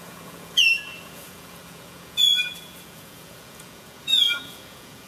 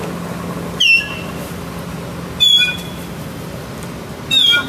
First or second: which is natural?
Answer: second